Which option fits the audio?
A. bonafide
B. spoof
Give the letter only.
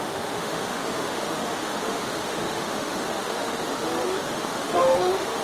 B